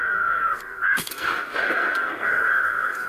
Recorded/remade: remade